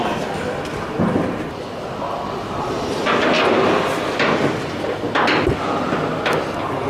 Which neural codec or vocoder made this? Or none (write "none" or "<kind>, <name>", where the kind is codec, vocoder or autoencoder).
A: none